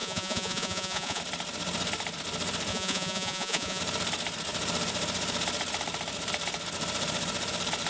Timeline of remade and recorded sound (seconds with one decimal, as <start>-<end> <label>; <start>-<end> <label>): 0.0-1.2 remade; 1.2-2.7 recorded; 2.7-3.8 remade; 3.8-7.9 recorded